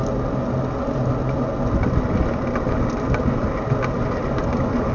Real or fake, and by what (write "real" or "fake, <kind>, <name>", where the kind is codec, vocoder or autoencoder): real